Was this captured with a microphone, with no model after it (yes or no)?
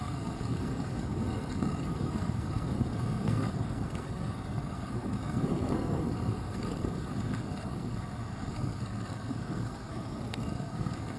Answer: no